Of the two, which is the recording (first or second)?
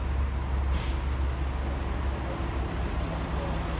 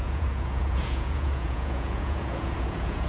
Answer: first